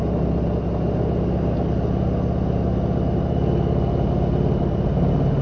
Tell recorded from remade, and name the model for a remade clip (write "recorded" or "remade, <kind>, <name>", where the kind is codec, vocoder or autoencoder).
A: recorded